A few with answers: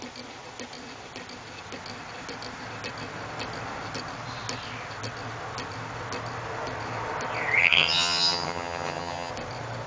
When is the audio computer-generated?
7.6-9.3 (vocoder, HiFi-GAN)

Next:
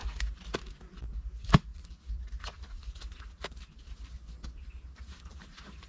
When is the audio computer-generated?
0.0-1.7 (vocoder, BigVGAN v2); 5.2-5.9